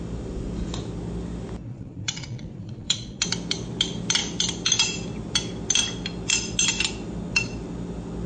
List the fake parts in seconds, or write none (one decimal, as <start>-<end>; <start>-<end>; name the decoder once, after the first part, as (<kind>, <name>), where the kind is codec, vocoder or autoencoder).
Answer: 1.7-3.2 (vocoder, Vocos)